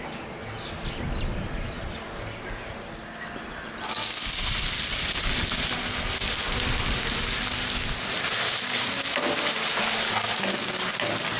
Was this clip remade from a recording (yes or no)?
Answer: no